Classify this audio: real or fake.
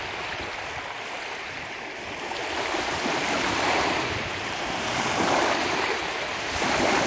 fake